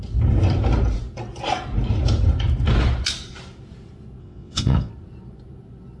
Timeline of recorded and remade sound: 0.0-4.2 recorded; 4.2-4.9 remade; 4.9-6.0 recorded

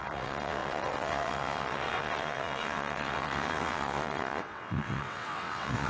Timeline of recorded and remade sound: 0.0-5.9 remade

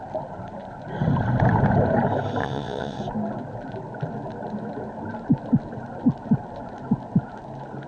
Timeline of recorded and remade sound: 0.0-2.4 recorded; 2.4-3.0 remade; 3.0-7.9 recorded

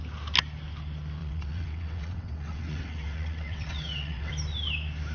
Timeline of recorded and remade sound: 0.0-1.2 recorded; 1.2-4.3 remade; 4.3-5.1 recorded

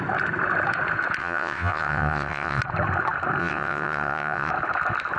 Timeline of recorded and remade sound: 0.0-1.2 recorded; 1.2-2.6 remade; 2.6-3.4 recorded; 3.4-4.5 remade; 4.5-5.2 recorded

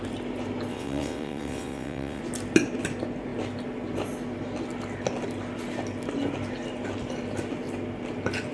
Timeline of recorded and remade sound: 0.0-0.7 recorded; 0.7-2.2 remade; 2.2-8.5 recorded

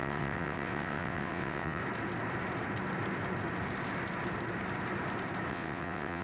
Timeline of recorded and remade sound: 0.0-1.8 remade; 1.8-5.5 recorded; 5.5-6.2 remade